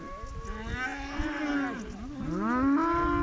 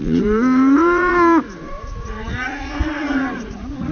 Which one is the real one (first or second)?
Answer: first